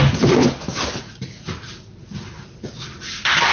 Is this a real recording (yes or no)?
yes